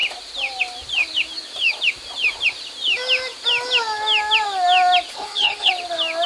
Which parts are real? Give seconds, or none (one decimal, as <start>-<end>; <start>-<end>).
0.0-5.1; 5.7-6.3